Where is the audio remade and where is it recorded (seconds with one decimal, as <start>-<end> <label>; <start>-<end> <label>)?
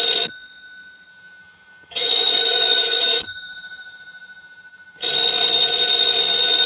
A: 0.0-1.1 recorded; 1.1-5.1 remade; 5.1-6.7 recorded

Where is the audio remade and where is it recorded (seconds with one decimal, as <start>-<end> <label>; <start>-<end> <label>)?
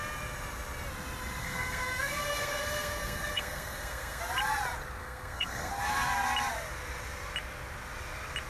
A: 0.0-1.4 recorded; 1.4-4.2 remade; 4.2-5.0 recorded; 5.0-5.7 remade; 5.7-8.5 recorded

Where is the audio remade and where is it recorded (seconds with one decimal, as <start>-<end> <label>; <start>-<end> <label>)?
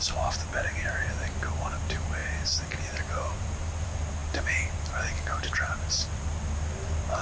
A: 0.0-7.2 recorded